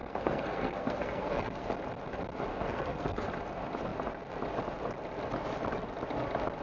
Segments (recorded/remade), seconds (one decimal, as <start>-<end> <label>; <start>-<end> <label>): 0.0-1.7 remade; 1.7-2.5 recorded; 2.5-3.3 remade; 3.3-6.6 recorded